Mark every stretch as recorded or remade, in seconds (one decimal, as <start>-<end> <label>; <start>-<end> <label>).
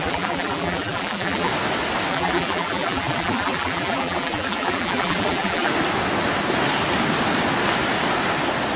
0.0-1.5 remade; 1.5-2.1 recorded; 2.1-5.7 remade; 5.7-8.8 recorded